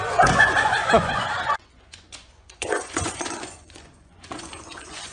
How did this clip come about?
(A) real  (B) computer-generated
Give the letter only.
B